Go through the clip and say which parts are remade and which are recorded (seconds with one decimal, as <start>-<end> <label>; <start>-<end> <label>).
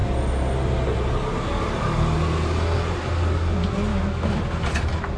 0.0-3.9 recorded; 3.9-4.4 remade; 4.4-5.2 recorded